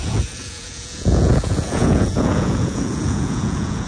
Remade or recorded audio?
remade